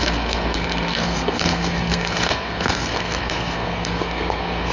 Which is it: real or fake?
fake